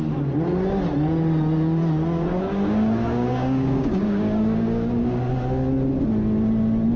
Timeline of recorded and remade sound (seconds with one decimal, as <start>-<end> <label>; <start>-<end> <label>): 0.0-2.3 recorded; 2.3-5.3 remade; 5.3-7.0 recorded